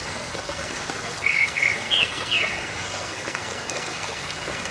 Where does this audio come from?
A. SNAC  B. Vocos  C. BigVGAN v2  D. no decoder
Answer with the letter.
A